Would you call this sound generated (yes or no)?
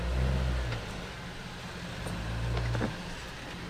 no